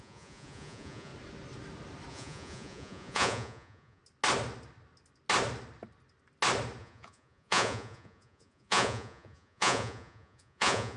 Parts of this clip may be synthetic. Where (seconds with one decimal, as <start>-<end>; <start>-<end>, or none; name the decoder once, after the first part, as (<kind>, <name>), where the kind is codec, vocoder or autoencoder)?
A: 0.0-1.1 (vocoder, Vocos); 2.1-4.0; 6.8-11.0

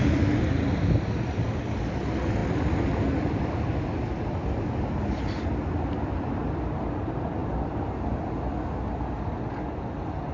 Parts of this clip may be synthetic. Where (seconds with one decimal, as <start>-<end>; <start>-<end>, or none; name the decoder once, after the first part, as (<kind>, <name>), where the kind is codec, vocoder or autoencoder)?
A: none

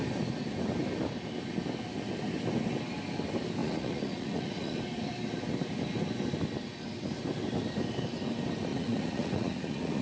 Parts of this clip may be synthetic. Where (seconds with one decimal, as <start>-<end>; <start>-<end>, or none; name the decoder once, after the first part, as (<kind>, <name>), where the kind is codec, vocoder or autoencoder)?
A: 3.6-4.8 (vocoder, Vocos); 8.7-10.0

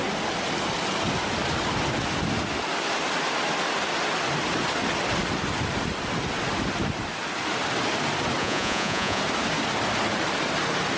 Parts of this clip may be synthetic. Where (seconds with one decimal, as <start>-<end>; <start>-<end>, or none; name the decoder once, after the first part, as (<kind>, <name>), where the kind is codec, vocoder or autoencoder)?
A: 8.4-9.2 (vocoder, Vocos)